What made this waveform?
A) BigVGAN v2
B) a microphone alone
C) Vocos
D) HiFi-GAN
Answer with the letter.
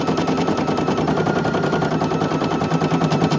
B